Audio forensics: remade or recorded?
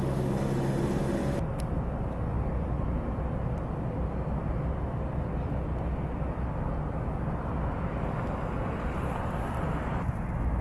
recorded